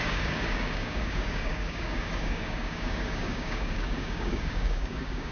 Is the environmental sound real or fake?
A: fake